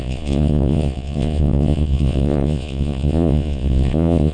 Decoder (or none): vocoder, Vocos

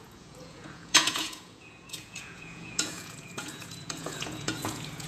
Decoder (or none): vocoder, Vocos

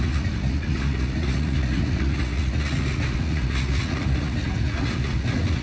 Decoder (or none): vocoder, Vocos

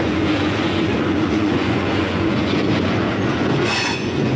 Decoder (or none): vocoder, Vocos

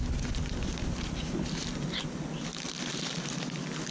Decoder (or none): none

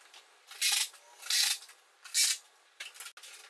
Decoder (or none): none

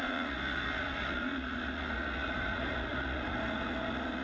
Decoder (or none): vocoder, Vocos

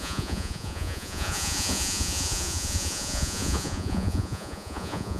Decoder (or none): vocoder, Vocos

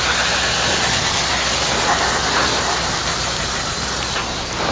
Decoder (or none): none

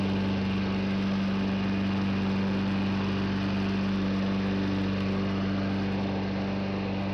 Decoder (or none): none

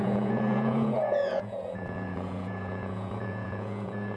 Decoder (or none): vocoder, Vocos